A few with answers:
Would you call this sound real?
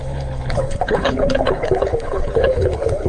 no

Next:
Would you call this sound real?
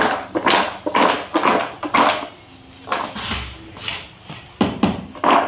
yes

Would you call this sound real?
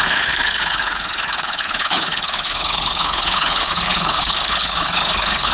no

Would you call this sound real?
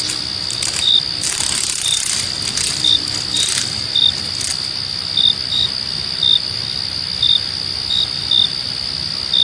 yes